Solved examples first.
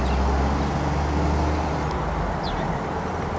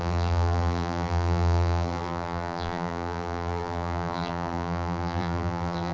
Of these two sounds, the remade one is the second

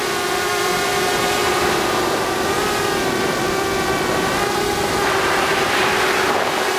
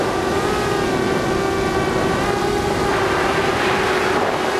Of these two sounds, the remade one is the first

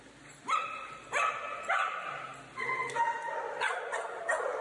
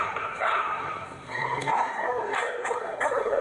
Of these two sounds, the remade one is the second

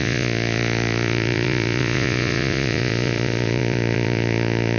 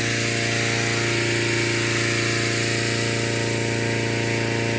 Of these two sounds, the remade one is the first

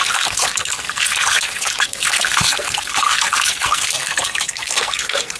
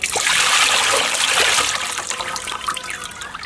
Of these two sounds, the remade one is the first